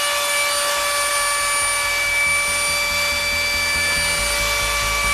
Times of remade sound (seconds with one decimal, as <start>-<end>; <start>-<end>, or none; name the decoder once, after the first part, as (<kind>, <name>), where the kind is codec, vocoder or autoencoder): none